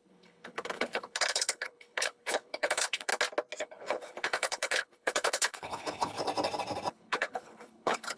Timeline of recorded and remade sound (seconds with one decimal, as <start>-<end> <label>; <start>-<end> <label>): 0.0-3.1 remade; 3.1-3.6 recorded; 3.6-6.2 remade; 6.2-6.9 recorded; 6.9-8.2 remade